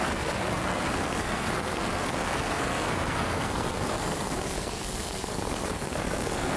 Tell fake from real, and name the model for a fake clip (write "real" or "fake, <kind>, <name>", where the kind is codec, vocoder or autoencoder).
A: fake, codec, SNAC